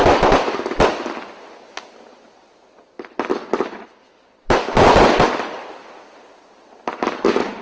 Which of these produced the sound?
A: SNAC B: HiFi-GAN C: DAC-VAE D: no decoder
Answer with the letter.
D